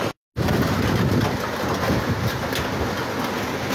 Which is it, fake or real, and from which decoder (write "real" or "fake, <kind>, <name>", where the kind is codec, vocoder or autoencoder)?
real